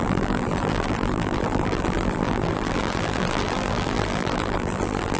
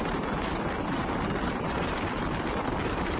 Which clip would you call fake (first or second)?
first